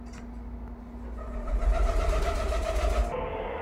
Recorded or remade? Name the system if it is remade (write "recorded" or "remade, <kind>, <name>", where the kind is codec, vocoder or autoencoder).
recorded